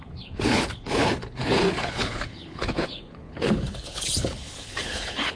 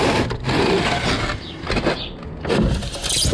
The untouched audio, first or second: second